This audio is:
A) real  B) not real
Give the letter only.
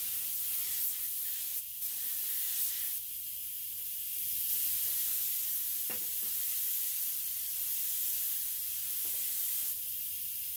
A